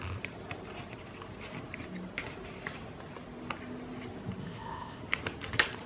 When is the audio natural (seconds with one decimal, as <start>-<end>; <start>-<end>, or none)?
0.0-4.4; 5.0-5.9